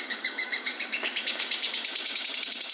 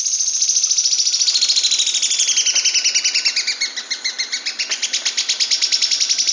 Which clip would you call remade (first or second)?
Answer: first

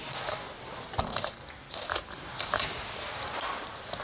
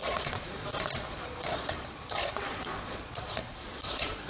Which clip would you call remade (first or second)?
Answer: second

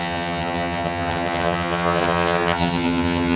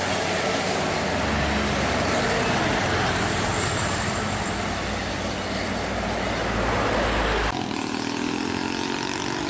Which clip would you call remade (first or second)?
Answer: first